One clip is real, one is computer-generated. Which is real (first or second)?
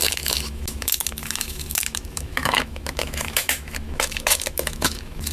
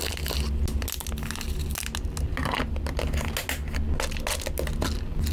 second